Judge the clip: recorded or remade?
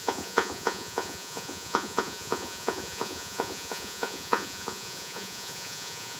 remade